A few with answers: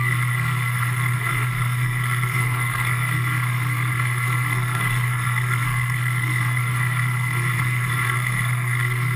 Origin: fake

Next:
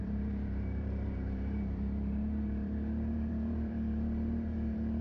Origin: fake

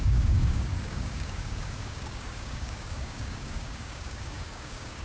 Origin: fake